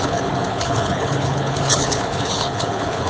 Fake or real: fake